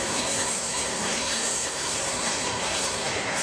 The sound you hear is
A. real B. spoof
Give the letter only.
B